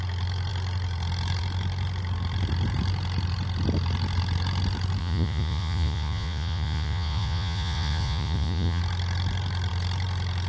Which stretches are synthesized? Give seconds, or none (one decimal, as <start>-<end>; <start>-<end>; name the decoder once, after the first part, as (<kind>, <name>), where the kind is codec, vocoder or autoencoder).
5.0-8.8 (vocoder, Vocos)